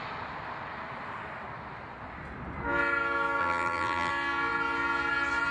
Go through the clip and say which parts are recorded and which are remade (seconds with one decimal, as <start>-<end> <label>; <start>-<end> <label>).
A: 0.0-3.4 recorded; 3.4-4.1 remade; 4.1-5.5 recorded